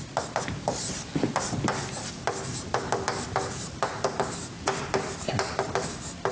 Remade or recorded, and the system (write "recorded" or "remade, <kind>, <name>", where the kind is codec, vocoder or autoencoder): recorded